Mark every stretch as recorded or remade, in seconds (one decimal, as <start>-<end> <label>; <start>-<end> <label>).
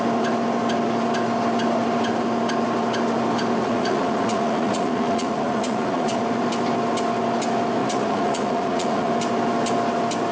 0.0-3.6 recorded; 3.6-6.2 remade; 6.2-7.8 recorded; 7.8-9.1 remade; 9.1-10.3 recorded